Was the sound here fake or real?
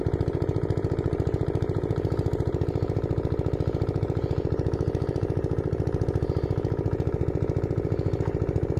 fake